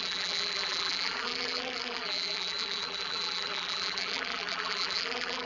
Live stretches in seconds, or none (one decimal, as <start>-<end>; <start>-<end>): none